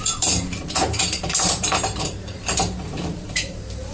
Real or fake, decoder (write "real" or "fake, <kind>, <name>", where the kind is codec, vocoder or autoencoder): fake, vocoder, BigVGAN v2